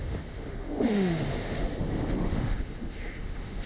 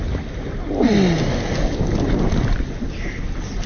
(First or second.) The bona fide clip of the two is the second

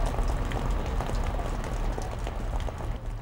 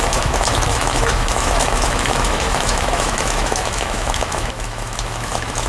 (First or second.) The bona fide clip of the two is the first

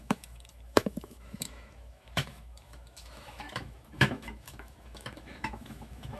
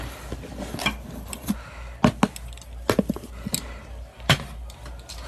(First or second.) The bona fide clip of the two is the second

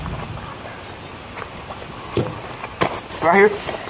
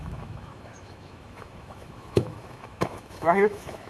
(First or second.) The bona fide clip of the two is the first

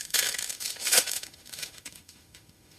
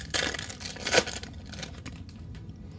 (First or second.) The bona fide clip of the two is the second